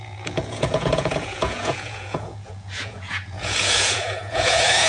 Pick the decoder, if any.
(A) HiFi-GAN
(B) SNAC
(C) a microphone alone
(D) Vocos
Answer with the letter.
D